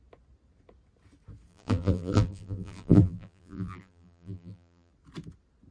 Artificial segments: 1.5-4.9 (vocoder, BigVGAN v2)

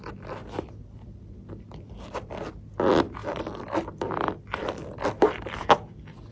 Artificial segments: 0.4-2.3 (vocoder, BigVGAN v2); 3.2-6.3

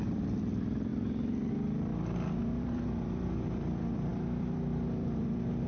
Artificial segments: 0.0-5.7 (vocoder, BigVGAN v2)

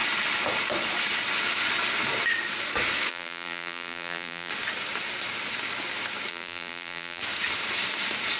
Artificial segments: 3.1-4.5 (vocoder, BigVGAN v2); 6.3-7.2

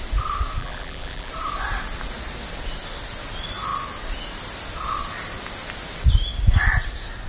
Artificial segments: 0.6-1.3 (vocoder, BigVGAN v2)

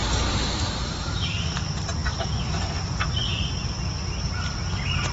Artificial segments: 0.0-1.2 (vocoder, BigVGAN v2)